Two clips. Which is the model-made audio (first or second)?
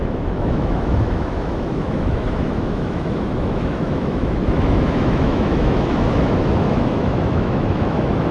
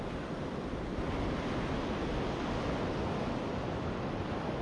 first